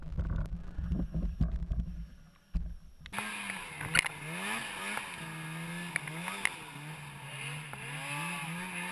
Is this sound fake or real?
real